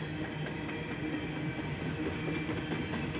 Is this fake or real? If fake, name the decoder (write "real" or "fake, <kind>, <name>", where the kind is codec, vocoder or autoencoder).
real